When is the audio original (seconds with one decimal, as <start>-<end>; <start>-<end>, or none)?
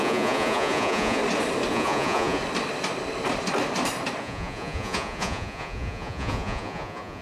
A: 1.2-1.7; 2.4-4.2